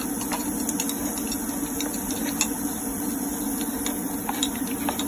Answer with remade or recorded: recorded